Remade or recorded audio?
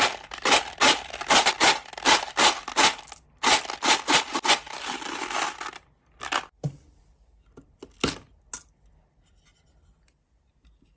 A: recorded